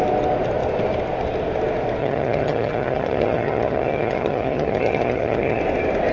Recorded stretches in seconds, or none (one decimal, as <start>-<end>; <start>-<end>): 0.0-2.0; 5.6-6.1